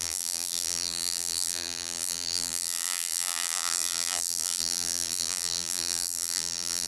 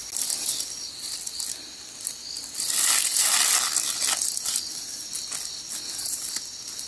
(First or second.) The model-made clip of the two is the first